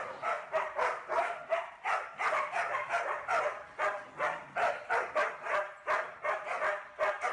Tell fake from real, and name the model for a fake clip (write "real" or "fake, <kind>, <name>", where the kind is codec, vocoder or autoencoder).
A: real